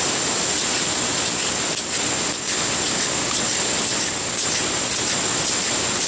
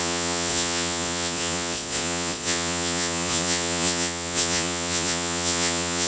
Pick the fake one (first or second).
second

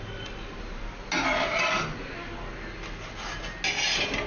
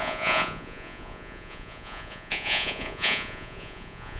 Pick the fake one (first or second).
second